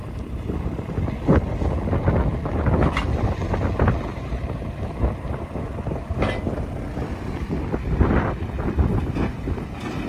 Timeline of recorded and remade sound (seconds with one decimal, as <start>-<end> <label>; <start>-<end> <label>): 0.0-4.1 recorded; 4.1-4.8 remade; 4.8-10.1 recorded